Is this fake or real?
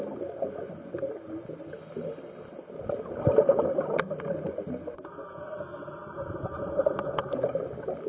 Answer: real